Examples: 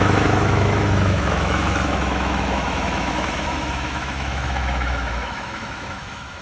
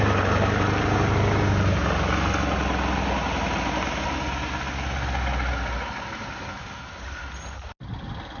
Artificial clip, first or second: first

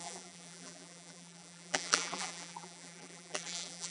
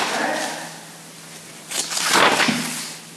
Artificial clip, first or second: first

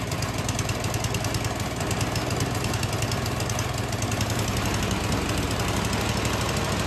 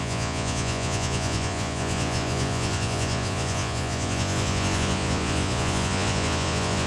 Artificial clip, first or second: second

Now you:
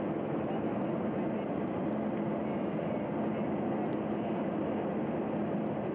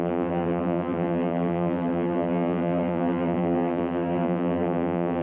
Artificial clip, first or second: second